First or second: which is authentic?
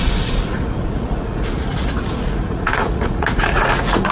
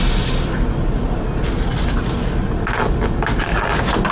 second